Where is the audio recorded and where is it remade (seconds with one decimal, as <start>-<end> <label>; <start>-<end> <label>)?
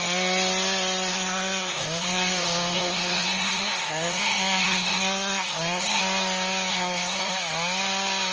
0.0-1.1 recorded; 1.1-6.0 remade; 6.0-6.7 recorded; 6.7-7.3 remade; 7.3-8.3 recorded